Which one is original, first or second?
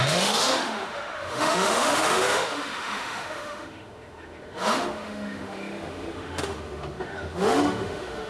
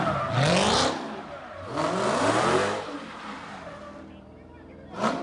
second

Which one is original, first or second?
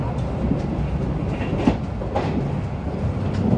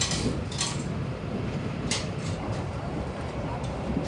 first